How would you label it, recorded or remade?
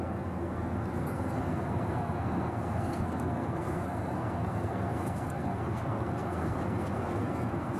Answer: remade